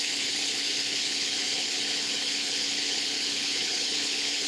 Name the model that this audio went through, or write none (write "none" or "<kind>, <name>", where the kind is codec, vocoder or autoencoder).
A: codec, HILCodec